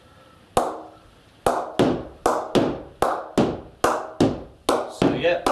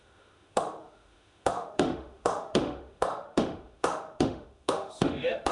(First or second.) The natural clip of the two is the first